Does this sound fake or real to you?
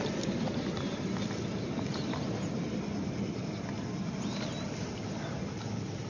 real